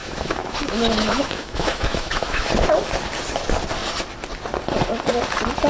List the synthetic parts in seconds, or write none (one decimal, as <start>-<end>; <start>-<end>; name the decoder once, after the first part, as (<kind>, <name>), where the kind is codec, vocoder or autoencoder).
0.0-2.5 (autoencoder, DAC-VAE)